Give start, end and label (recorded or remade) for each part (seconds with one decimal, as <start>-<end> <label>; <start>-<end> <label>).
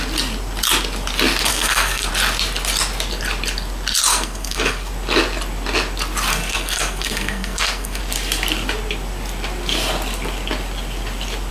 0.0-1.5 recorded; 1.5-2.1 remade; 2.1-4.1 recorded; 4.1-4.9 remade; 4.9-6.3 recorded; 6.3-8.0 remade; 8.0-11.5 recorded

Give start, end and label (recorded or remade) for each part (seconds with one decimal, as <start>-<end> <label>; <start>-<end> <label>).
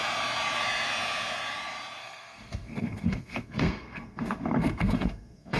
0.0-2.0 recorded; 2.0-5.6 remade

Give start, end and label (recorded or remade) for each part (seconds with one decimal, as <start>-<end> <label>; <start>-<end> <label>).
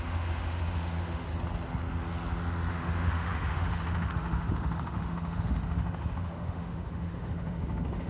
0.0-1.3 remade; 1.3-2.7 recorded; 2.7-8.1 remade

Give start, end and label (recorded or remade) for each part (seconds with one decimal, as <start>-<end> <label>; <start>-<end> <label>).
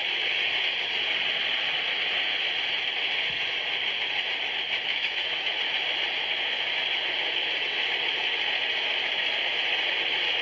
0.0-4.9 recorded; 4.9-5.6 remade; 5.6-10.4 recorded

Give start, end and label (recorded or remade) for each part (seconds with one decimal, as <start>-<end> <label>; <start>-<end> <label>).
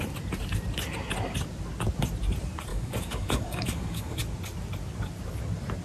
0.0-2.7 recorded; 2.7-4.2 remade; 4.2-5.8 recorded